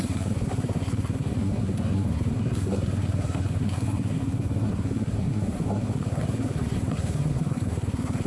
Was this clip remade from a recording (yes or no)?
yes